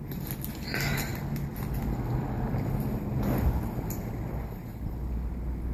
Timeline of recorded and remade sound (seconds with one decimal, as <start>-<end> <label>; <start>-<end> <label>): 0.0-5.7 recorded